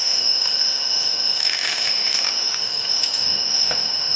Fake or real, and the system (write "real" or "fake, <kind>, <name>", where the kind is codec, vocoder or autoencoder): fake, autoencoder, DAC-VAE